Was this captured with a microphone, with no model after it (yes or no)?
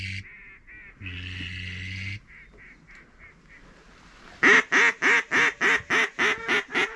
yes